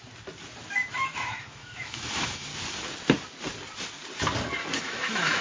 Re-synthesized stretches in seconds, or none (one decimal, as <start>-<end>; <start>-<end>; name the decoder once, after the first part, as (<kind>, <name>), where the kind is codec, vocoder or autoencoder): 0.7-2.5 (autoencoder, DAC-VAE); 4.8-5.4